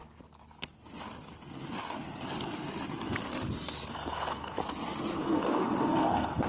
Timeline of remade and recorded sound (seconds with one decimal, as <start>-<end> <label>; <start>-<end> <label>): 0.0-3.9 recorded; 3.9-4.6 remade; 4.6-5.2 recorded; 5.2-6.5 remade